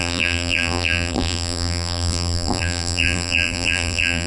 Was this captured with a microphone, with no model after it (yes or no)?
no